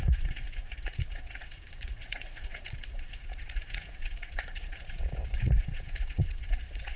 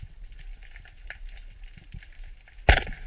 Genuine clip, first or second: second